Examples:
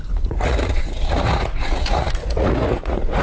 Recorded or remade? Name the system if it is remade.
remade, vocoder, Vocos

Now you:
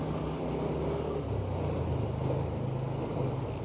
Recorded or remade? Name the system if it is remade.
recorded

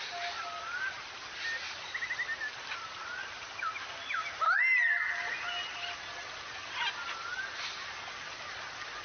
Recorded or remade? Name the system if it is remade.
recorded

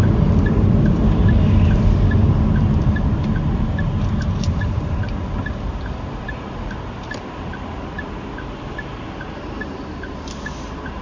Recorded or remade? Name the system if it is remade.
recorded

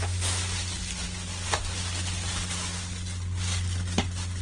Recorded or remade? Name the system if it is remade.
recorded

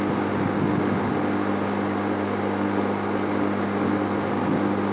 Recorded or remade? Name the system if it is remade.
recorded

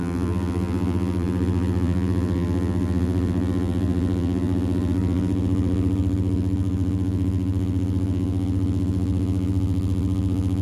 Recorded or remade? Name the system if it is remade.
remade, vocoder, BigVGAN v2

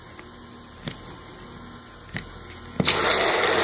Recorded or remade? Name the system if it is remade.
recorded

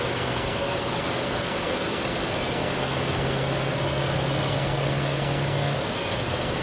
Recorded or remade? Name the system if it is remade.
remade, codec, SNAC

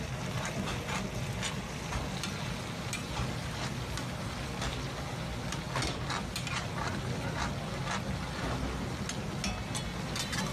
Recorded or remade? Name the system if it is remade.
recorded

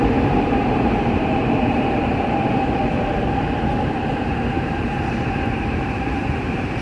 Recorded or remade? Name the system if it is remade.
remade, vocoder, BigVGAN v2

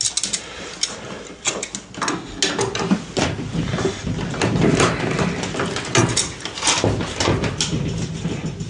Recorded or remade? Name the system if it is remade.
recorded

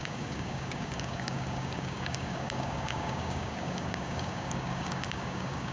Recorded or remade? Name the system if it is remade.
remade, codec, DAC